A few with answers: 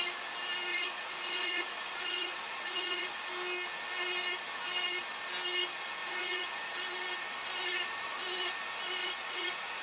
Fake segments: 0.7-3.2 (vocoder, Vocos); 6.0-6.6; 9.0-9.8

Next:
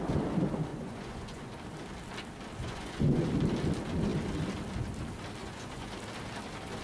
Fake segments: 0.7-1.5 (vocoder, Vocos); 2.6-3.3; 5.4-5.9